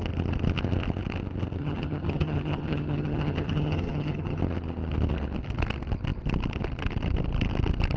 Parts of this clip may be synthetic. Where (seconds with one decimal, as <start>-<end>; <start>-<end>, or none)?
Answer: 1.6-4.4